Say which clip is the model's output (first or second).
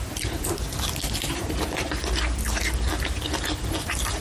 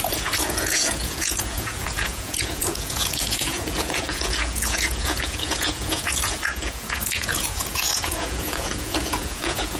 second